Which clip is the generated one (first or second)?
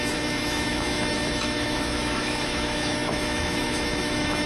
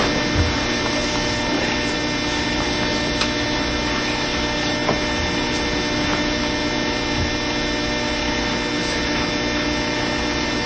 first